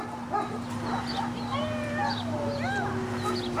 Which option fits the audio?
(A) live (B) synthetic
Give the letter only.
A